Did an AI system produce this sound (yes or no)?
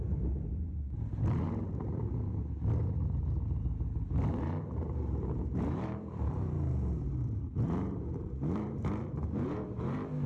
yes